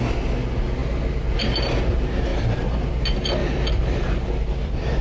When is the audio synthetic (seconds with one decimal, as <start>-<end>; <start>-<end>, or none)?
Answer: 2.3-2.9; 3.4-5.0